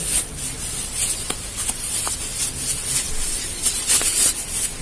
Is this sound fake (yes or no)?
no